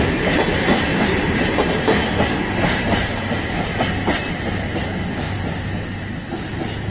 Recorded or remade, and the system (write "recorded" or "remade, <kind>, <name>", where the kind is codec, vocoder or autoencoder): recorded